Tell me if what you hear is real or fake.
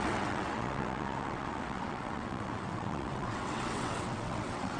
fake